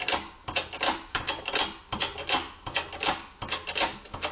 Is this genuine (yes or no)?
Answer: yes